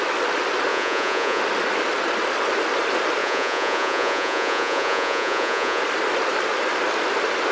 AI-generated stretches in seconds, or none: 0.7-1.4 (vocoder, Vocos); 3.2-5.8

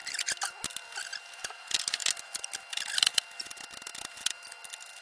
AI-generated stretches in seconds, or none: none

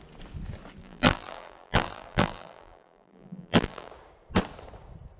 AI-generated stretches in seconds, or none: 0.8-3.9 (vocoder, BigVGAN v2)

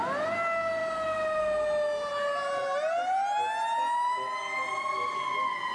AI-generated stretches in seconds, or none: none

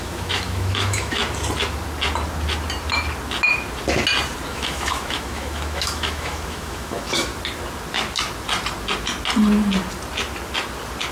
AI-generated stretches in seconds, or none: 0.0-1.2 (autoencoder, DAC-VAE); 4.5-7.3

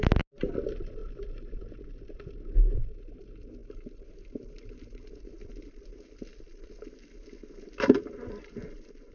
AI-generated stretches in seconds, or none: 1.0-1.8 (vocoder, BigVGAN v2)

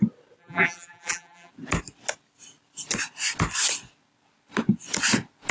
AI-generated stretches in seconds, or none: 0.4-1.5 (vocoder, BigVGAN v2)

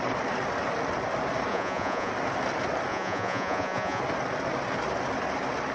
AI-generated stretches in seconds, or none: 1.5-2.1 (vocoder, Vocos); 2.9-4.0